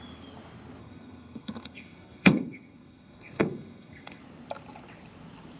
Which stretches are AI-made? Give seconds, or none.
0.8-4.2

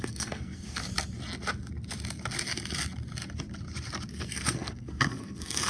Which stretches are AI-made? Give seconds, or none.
0.0-0.8; 4.1-5.7

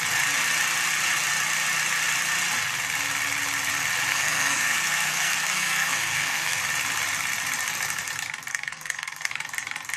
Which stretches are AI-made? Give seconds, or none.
4.1-6.6; 8.5-9.3

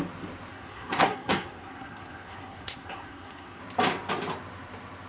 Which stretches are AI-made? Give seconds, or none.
0.5-3.6

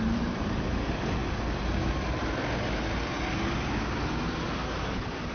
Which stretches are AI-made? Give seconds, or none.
none

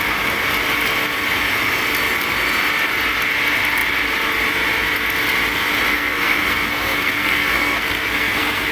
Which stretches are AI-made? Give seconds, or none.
5.9-8.7

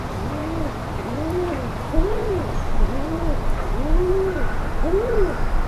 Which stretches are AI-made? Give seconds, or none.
none

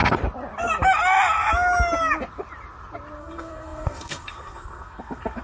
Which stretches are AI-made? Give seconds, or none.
3.2-5.4